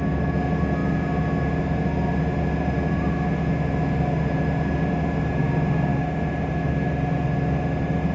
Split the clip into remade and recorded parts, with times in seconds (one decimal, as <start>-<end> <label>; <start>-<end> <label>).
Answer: 0.0-8.1 recorded